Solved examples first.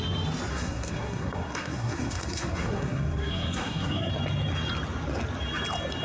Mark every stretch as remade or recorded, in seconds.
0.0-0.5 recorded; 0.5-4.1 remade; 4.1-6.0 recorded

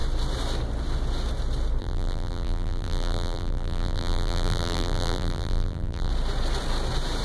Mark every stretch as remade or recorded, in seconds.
0.0-1.8 recorded; 1.8-6.1 remade; 6.1-7.2 recorded

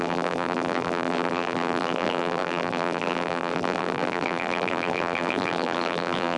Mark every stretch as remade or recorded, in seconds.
0.0-6.4 remade

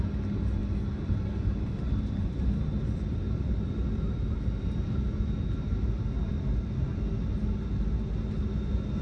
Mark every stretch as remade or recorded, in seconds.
0.0-0.6 recorded; 0.6-2.4 remade; 2.4-9.0 recorded